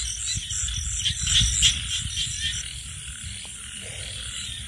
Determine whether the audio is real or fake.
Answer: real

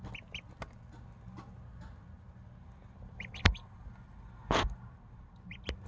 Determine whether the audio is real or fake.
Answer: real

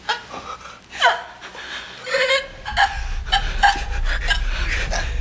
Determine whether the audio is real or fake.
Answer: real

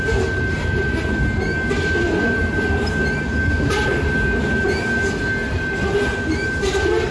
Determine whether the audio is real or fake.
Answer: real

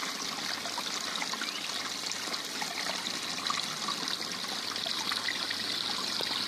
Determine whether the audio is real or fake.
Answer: real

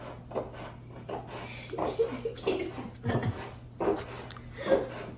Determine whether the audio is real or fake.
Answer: real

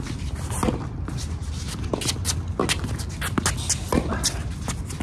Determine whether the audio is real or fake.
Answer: real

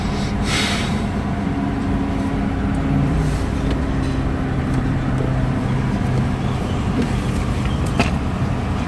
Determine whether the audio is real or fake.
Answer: fake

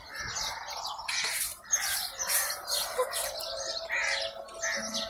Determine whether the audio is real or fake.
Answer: real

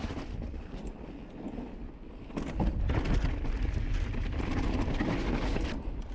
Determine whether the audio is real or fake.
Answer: real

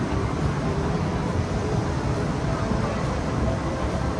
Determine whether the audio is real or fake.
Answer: fake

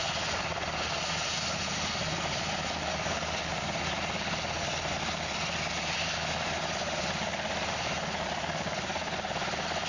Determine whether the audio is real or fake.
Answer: real